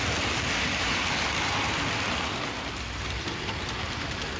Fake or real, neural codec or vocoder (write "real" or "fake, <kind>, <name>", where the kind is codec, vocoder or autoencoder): real